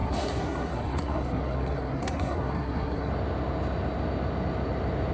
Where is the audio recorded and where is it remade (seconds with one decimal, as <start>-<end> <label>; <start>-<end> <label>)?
0.0-3.1 remade; 3.1-5.1 recorded